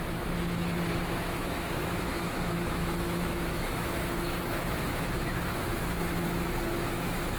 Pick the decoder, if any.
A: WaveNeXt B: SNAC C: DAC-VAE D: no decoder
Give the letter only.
C